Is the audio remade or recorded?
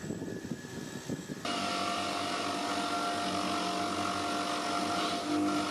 recorded